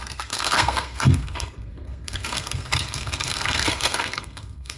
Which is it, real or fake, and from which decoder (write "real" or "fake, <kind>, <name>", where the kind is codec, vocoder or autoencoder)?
fake, codec, SNAC